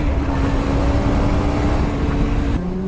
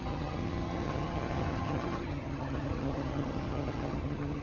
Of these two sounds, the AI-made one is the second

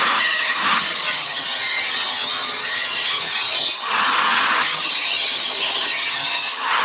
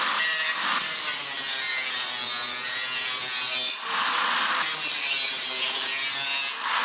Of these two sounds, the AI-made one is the first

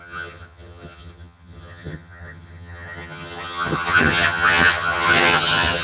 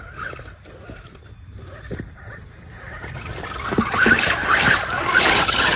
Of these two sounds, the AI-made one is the first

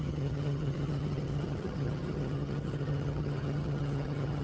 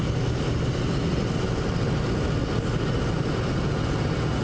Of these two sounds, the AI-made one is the first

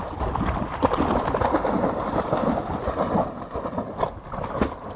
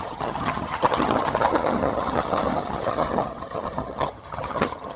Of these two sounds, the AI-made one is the second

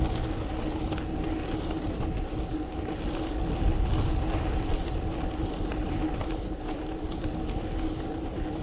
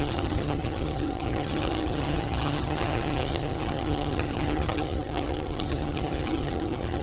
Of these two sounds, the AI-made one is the second